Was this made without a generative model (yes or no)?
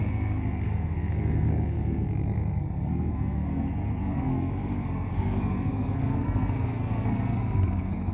no